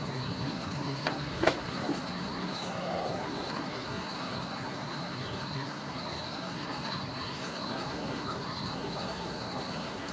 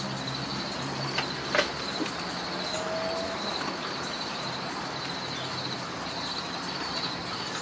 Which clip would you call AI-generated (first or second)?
first